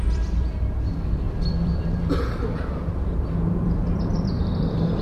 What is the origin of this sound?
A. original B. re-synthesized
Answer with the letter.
B